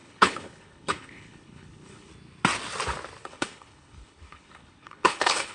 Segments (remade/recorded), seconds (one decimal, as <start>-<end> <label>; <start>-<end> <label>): 0.0-2.1 remade; 2.1-3.2 recorded; 3.2-5.5 remade